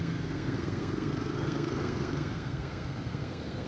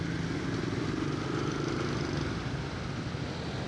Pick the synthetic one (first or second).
first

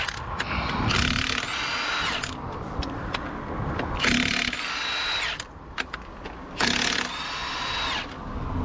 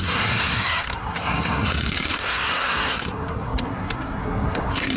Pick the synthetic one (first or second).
second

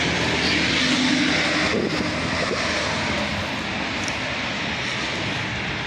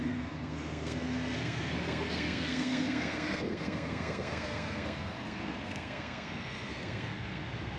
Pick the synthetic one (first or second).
second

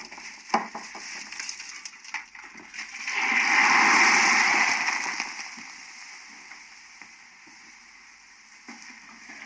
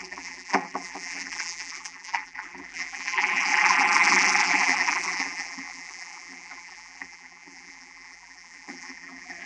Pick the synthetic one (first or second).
second